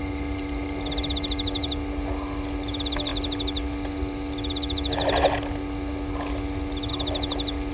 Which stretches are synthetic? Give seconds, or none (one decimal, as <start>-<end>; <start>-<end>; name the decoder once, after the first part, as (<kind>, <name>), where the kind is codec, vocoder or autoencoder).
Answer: none